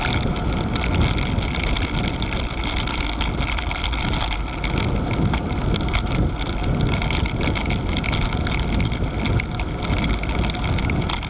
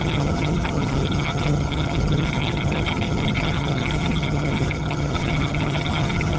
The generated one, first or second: second